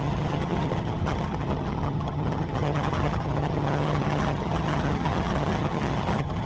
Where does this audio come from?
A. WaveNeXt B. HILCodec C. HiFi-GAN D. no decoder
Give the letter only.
C